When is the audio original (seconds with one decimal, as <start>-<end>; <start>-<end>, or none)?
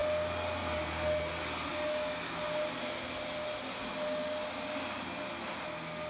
0.0-6.1